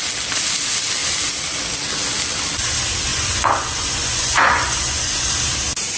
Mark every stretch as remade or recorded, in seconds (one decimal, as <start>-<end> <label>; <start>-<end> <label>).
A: 0.0-3.1 recorded; 3.1-5.3 remade; 5.3-6.0 recorded